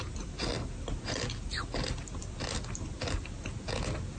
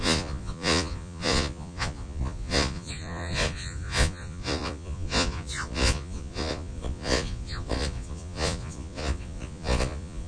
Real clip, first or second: first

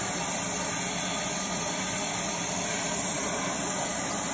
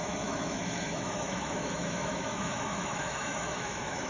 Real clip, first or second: first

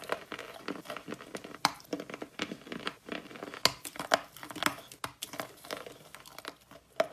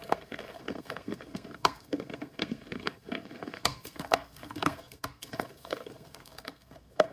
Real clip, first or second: first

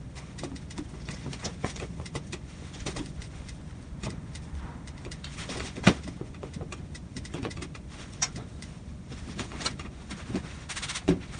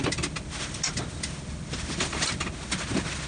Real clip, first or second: second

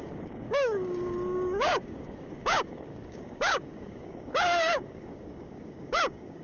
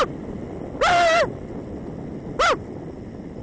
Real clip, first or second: second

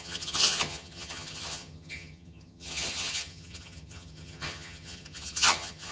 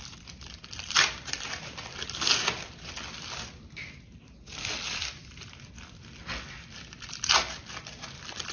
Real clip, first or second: second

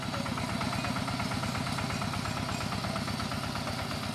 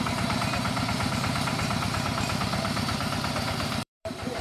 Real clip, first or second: first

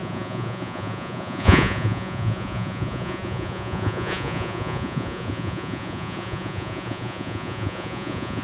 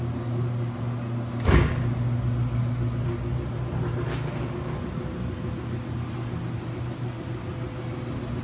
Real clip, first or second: second